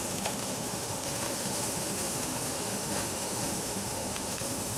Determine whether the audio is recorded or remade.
remade